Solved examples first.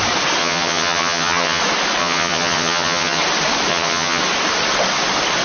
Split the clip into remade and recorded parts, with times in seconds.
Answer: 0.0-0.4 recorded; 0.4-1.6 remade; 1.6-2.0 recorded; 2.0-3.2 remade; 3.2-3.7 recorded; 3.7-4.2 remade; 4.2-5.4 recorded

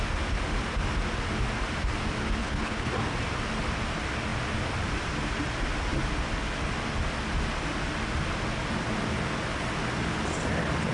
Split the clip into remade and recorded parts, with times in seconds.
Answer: 0.0-2.4 recorded; 2.4-2.9 remade; 2.9-10.9 recorded

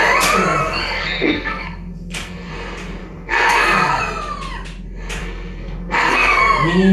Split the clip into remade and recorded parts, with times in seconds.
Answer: 0.0-0.6 recorded; 0.6-2.5 remade; 2.5-3.0 recorded; 3.0-4.0 remade; 4.0-5.2 recorded; 5.2-6.4 remade; 6.4-6.9 recorded

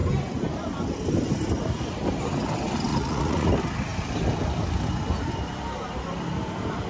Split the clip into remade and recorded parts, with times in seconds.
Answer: 0.0-2.9 recorded; 2.9-3.5 remade; 3.5-6.9 recorded